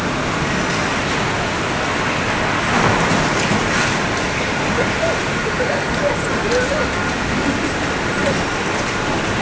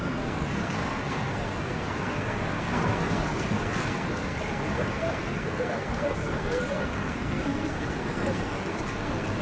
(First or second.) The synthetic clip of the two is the second